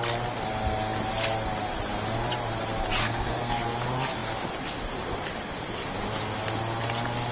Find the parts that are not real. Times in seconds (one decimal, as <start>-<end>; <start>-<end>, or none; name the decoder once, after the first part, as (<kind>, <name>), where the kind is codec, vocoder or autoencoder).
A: 3.0-3.6 (codec, SNAC)